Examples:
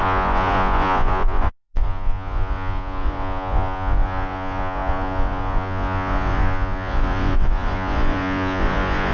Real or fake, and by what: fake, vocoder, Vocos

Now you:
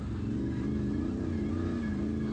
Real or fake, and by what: real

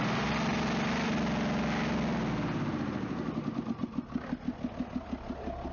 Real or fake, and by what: real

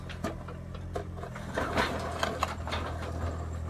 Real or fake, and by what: real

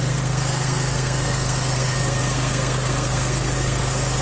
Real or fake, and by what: fake, codec, SNAC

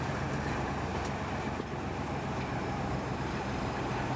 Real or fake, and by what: fake, vocoder, BigVGAN v2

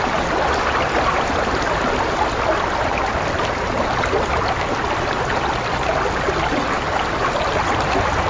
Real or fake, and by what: real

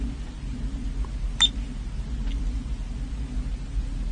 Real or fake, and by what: real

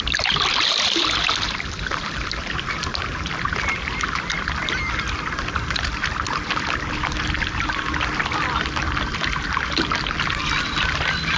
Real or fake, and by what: real